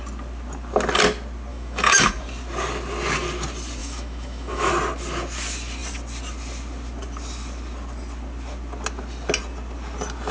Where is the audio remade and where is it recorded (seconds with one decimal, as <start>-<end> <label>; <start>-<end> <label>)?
0.0-1.5 recorded; 1.5-2.1 remade; 2.1-3.8 recorded; 3.8-4.7 remade; 4.7-10.3 recorded